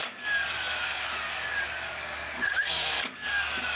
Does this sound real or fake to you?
fake